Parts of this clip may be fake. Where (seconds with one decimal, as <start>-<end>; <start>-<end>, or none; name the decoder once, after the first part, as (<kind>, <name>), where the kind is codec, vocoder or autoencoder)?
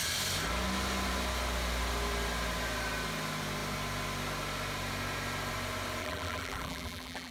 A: 6.0-7.3 (vocoder, BigVGAN v2)